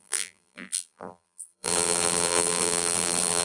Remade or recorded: remade